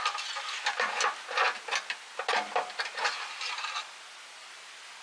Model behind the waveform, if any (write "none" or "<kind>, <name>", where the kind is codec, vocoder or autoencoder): none